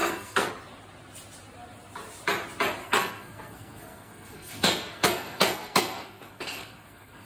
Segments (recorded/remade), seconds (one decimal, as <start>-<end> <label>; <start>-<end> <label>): 0.0-0.5 remade; 0.5-2.8 recorded; 2.8-7.3 remade